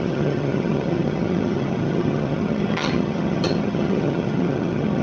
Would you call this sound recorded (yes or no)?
no